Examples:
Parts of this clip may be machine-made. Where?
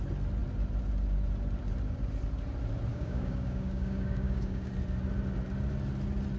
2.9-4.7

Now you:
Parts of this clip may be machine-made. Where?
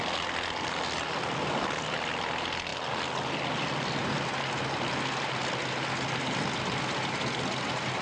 none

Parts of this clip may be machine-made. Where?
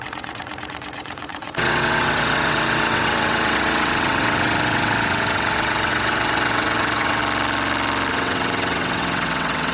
0.0-7.2; 8.1-9.7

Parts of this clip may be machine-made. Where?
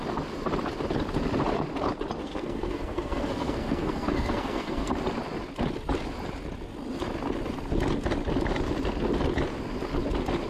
2.2-4.9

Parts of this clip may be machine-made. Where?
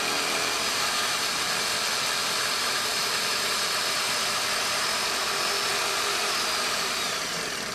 0.7-1.8; 2.2-5.3; 5.7-7.3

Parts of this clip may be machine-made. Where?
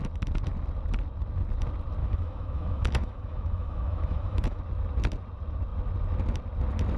2.0-4.6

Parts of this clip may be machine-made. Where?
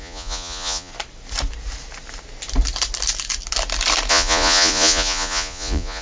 0.0-0.9; 4.1-6.0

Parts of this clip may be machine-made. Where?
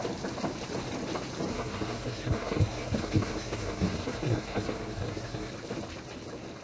1.5-5.5